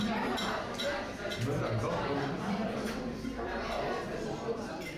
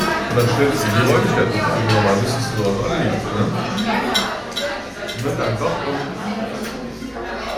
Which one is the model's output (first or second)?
first